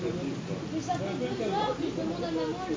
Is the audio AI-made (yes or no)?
no